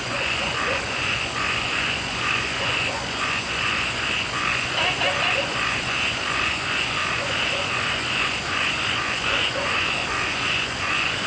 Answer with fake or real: fake